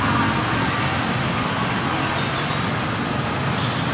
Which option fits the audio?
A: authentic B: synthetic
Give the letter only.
A